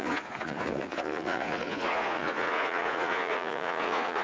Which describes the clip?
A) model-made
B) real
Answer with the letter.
A